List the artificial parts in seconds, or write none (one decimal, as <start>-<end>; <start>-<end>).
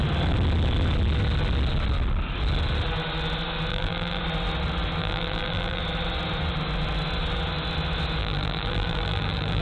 3.7-4.2; 5.0-5.8; 8.2-9.6